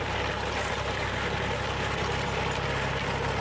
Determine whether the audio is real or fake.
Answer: real